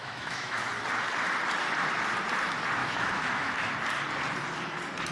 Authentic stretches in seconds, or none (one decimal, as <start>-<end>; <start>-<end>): 0.7-2.8; 3.7-5.1